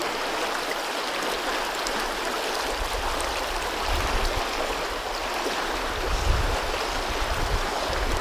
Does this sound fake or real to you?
real